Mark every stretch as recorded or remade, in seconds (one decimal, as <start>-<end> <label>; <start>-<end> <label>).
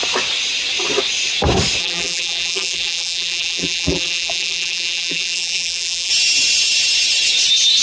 0.0-1.8 recorded; 1.8-6.1 remade; 6.1-7.8 recorded